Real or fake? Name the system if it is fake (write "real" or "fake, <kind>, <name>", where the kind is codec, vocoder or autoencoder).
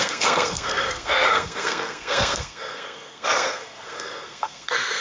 fake, codec, SNAC